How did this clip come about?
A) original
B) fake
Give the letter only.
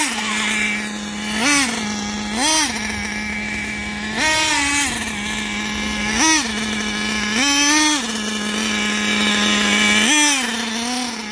A